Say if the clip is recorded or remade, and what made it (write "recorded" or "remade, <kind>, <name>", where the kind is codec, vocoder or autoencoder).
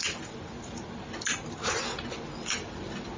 recorded